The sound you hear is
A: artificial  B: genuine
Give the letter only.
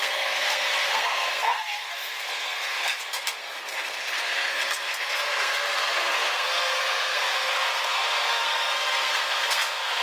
A